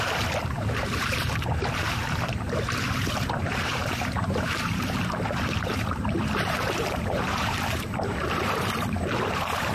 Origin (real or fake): fake